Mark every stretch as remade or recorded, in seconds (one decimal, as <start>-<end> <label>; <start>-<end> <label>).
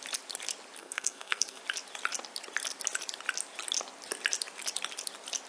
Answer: 0.0-0.8 recorded; 0.8-1.6 remade; 1.6-5.5 recorded